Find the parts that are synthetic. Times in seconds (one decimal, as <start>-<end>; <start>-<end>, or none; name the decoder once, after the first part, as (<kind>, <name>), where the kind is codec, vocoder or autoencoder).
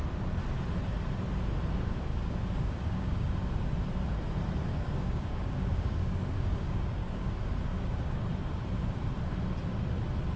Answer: 2.1-3.3 (codec, DAC); 4.7-7.3; 7.7-8.2